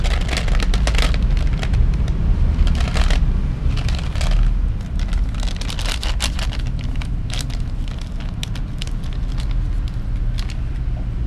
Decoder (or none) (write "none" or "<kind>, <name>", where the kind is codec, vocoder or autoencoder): none